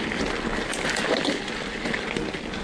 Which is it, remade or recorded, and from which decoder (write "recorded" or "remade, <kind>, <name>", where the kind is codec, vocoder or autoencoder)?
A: recorded